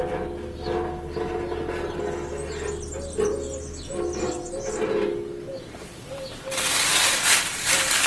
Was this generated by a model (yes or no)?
no